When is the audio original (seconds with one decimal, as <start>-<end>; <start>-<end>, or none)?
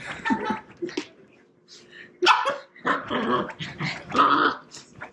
0.0-5.1